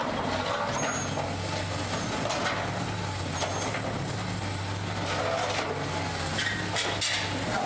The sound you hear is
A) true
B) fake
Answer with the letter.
A